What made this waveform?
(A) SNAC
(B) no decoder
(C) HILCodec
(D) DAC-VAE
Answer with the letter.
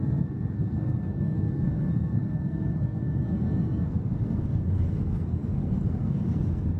A